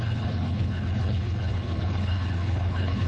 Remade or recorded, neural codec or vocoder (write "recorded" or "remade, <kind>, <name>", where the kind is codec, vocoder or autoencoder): remade, codec, HILCodec